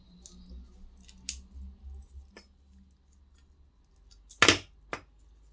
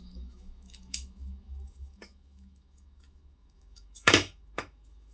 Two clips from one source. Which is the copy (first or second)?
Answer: second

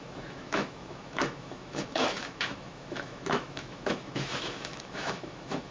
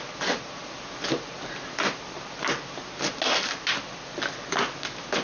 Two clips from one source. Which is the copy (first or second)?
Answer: first